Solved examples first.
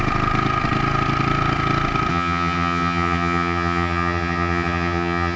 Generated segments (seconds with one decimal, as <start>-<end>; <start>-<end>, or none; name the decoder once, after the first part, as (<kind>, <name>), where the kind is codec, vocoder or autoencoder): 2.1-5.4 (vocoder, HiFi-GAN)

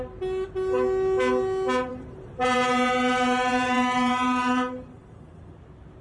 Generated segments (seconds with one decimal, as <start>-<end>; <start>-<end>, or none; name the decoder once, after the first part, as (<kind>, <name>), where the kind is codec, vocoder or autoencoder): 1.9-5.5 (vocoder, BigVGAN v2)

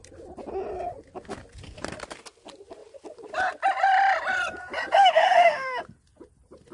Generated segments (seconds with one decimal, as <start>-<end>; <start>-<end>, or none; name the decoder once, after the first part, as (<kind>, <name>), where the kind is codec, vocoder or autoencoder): 5.0-5.8 (autoencoder, DAC-VAE)